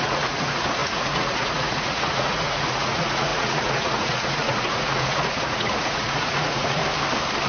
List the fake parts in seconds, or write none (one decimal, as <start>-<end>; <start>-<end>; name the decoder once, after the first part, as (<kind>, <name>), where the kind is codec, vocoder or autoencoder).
0.0-6.8 (vocoder, Vocos)